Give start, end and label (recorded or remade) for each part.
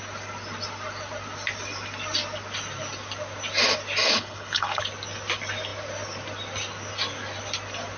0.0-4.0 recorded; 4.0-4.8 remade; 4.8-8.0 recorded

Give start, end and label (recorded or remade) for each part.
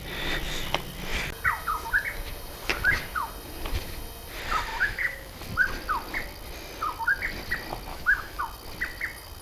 0.0-4.7 recorded; 4.7-5.4 remade; 5.4-7.9 recorded; 7.9-8.4 remade; 8.4-9.4 recorded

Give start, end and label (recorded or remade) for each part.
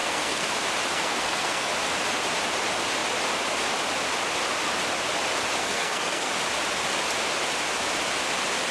0.0-0.5 remade; 0.5-0.9 recorded; 0.9-1.7 remade; 1.7-5.6 recorded; 5.6-6.3 remade; 6.3-8.7 recorded